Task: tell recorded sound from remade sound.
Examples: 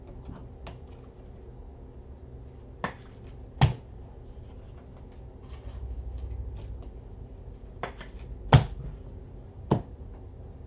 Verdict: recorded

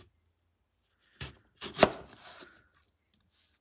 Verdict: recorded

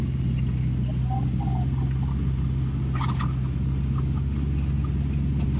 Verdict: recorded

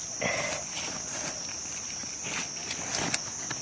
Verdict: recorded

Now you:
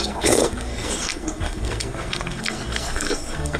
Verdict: remade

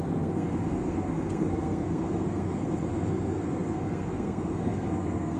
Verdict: remade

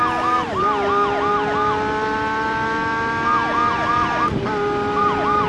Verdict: recorded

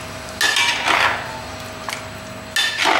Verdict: recorded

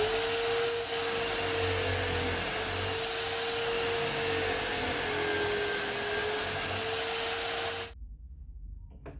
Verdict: recorded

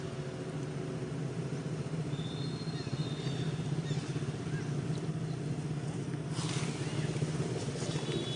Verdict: recorded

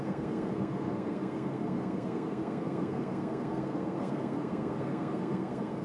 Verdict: remade